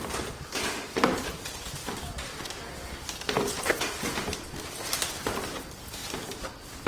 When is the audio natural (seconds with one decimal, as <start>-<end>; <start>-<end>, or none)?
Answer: 0.0-1.8; 3.8-6.0; 6.5-6.9